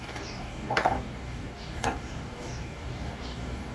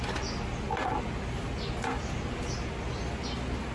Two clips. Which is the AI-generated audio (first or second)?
first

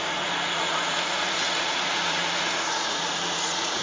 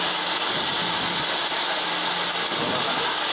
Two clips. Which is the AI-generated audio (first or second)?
first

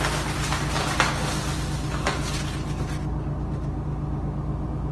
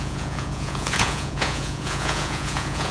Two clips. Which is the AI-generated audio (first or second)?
second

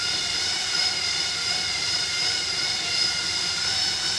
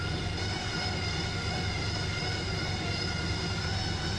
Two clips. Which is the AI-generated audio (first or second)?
first